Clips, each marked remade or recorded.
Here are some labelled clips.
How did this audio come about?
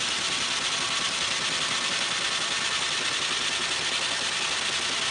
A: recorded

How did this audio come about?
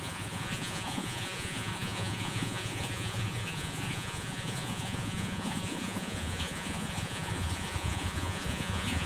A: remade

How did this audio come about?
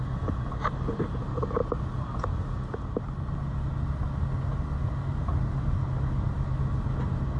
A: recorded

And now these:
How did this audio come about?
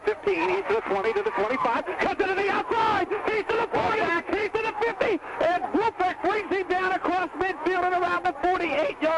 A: remade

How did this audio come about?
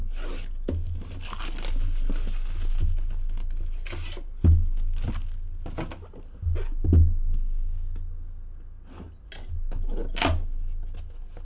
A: recorded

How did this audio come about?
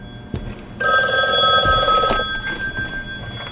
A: recorded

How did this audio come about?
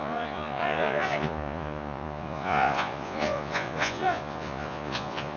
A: remade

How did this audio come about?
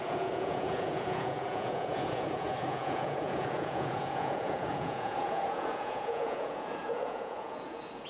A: remade